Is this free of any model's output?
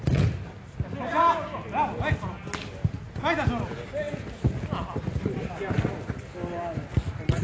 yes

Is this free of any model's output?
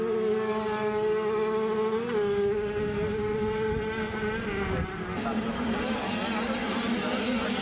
yes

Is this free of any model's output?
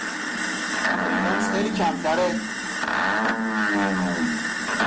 yes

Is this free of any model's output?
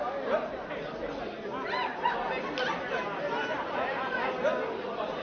yes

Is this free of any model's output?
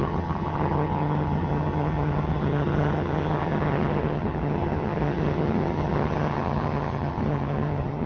no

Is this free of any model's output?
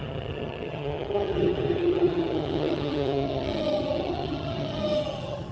no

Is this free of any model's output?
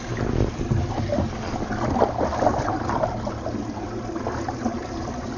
yes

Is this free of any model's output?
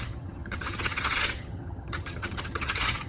no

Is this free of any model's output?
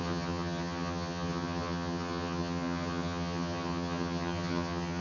no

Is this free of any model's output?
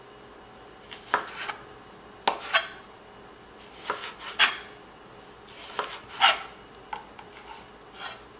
yes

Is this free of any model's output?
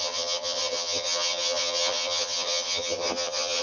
no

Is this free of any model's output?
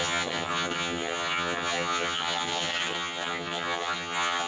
no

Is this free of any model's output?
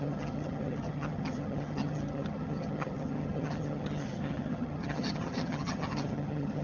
no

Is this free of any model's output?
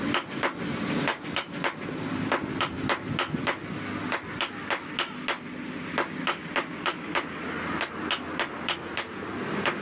yes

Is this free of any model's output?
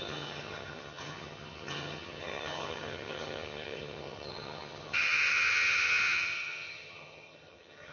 no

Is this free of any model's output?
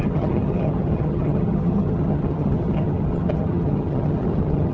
no